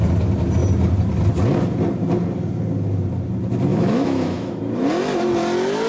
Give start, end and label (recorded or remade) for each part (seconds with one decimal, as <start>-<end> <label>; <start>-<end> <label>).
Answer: 0.0-3.7 recorded; 3.7-4.6 remade; 4.6-5.9 recorded